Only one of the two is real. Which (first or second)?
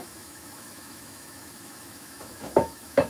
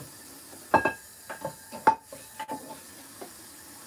second